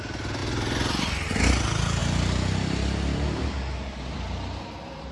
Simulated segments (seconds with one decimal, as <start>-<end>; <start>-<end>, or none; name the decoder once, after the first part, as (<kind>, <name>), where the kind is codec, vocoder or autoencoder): none